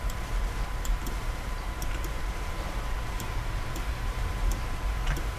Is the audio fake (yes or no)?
yes